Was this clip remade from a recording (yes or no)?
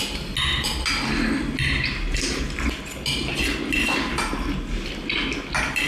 no